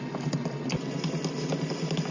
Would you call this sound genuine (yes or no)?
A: yes